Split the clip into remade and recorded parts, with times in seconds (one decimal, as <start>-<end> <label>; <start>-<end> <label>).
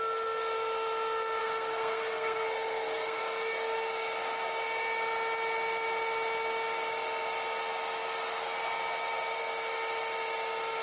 0.0-1.4 recorded; 1.4-3.2 remade; 3.2-10.8 recorded